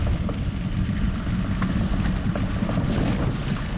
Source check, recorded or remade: recorded